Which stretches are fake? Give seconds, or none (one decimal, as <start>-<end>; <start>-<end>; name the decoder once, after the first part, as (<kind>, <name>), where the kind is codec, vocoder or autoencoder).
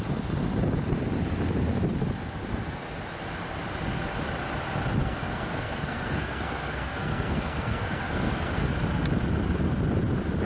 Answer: 5.0-8.7 (codec, SNAC)